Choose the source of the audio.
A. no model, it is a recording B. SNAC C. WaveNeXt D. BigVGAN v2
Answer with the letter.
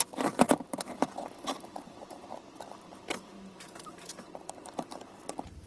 D